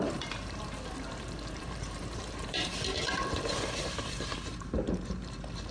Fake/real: fake